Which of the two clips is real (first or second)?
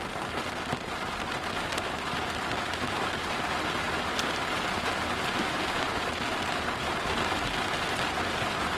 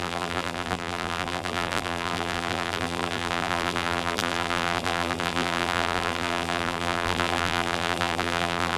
first